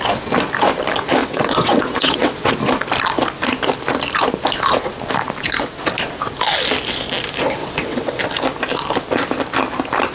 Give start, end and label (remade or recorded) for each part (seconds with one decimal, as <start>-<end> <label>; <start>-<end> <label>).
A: 0.0-1.2 recorded; 1.2-2.5 remade; 2.5-7.6 recorded; 7.6-8.2 remade; 8.2-10.1 recorded